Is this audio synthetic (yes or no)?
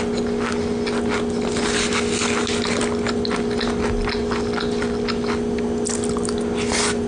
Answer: no